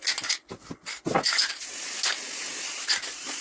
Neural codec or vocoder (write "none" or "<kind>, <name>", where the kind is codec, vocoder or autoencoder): none